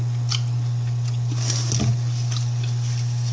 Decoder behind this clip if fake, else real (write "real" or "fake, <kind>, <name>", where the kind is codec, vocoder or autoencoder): real